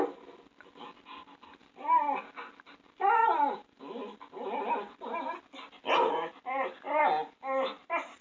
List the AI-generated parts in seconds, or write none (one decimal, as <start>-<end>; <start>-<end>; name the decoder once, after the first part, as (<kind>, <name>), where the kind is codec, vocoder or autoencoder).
none